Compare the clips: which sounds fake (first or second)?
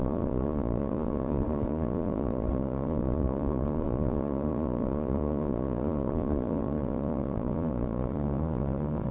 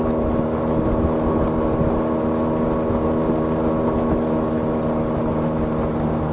first